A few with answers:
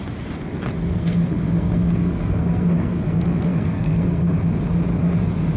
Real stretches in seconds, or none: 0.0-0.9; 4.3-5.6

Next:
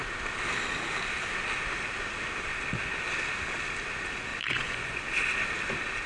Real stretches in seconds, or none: 0.0-4.3; 5.0-6.1